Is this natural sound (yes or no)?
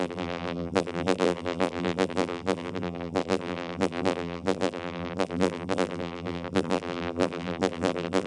no